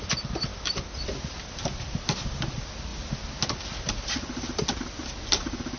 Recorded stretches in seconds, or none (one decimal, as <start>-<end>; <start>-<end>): 0.0-5.8